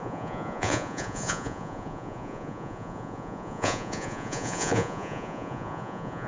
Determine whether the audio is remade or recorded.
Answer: remade